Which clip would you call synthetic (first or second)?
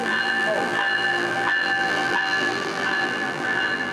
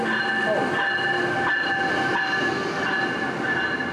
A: first